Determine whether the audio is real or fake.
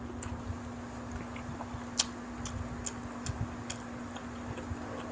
real